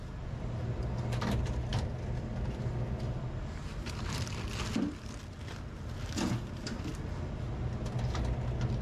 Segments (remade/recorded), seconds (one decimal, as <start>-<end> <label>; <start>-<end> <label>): 0.0-8.8 recorded